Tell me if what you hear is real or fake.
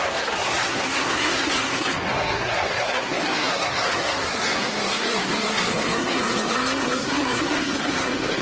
fake